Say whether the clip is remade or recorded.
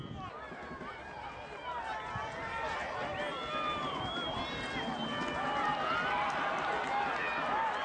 recorded